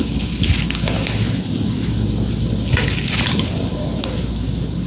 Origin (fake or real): real